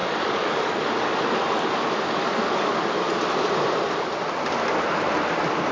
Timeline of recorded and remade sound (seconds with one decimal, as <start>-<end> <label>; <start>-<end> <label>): 0.0-0.8 remade; 0.8-2.2 recorded; 2.2-2.7 remade; 2.7-5.7 recorded